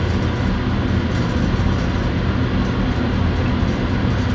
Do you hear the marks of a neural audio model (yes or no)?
no